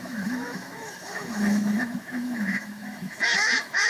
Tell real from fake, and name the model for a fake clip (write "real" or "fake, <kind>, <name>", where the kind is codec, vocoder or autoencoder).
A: fake, autoencoder, DAC-VAE